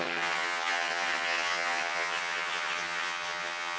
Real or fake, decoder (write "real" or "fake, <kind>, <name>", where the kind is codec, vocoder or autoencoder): fake, vocoder, HiFi-GAN